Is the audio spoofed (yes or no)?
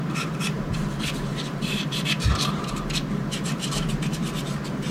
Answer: yes